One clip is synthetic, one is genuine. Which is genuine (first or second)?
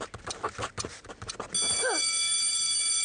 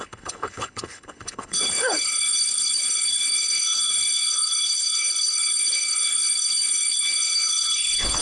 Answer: first